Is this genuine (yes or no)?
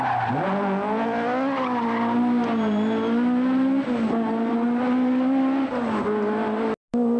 yes